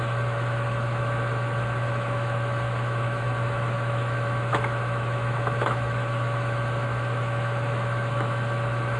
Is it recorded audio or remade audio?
remade